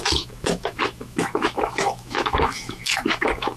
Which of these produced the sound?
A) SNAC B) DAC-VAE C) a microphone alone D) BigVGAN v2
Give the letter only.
B